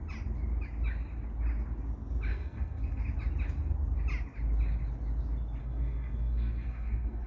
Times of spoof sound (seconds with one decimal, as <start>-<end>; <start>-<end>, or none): 2.3-3.0; 5.6-7.3